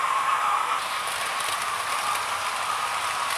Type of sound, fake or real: real